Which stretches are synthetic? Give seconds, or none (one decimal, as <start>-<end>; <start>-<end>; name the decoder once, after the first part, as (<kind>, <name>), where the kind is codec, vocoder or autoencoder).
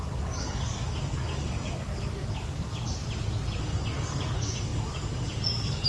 0.0-2.7 (codec, DAC); 3.6-5.9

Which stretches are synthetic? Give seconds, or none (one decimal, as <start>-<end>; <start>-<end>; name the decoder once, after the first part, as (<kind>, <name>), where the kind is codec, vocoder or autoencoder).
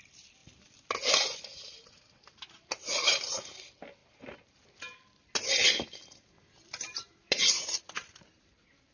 none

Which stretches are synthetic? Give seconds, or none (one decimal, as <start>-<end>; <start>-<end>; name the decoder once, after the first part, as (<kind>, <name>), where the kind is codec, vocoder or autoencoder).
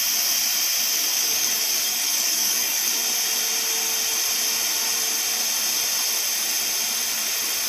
1.1-2.9 (codec, DAC)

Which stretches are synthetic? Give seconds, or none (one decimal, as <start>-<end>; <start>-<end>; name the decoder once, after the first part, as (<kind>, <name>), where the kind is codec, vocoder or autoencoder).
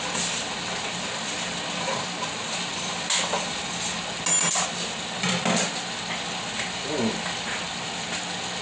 none